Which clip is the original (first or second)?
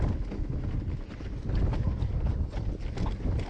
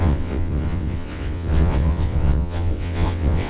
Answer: first